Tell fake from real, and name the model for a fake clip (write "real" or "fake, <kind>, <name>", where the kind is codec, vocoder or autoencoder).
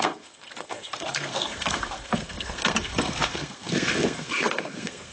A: fake, codec, SNAC